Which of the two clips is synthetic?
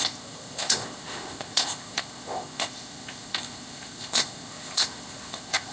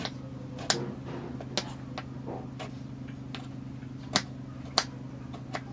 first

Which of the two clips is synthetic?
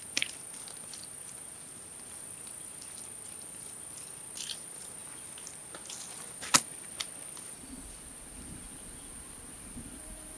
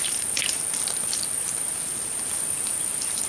second